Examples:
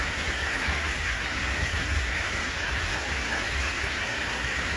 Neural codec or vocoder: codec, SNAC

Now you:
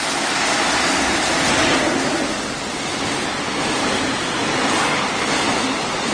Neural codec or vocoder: none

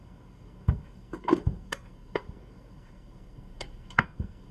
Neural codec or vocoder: codec, SNAC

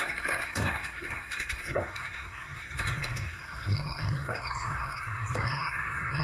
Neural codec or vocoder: codec, SNAC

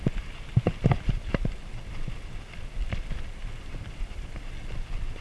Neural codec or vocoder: none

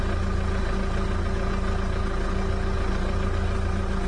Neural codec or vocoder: none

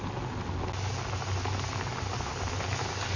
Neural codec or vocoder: none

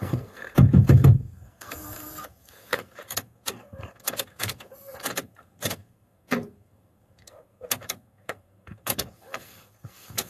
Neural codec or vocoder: codec, SNAC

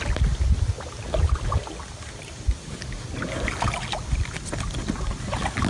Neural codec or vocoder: none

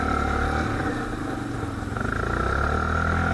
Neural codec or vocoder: none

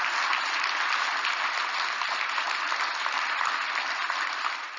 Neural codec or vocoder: none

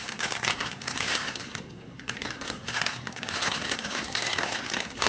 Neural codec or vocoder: codec, SNAC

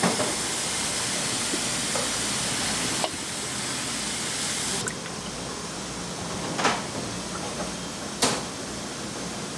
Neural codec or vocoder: none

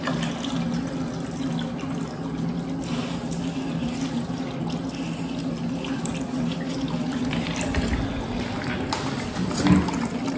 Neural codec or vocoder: none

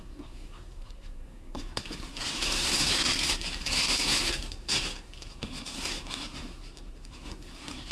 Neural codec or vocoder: codec, SNAC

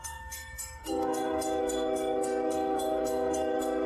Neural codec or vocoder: codec, SNAC